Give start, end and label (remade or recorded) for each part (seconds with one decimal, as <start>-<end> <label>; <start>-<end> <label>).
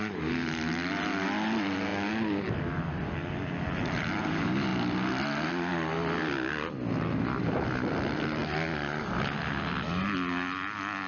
0.0-11.1 recorded